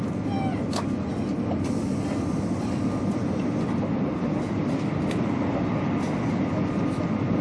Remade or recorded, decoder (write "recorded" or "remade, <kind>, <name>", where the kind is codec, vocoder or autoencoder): recorded